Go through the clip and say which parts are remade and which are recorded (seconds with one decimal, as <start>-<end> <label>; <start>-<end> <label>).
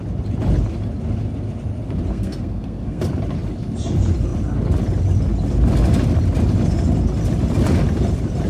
0.0-2.1 recorded; 2.1-3.0 remade; 3.0-8.5 recorded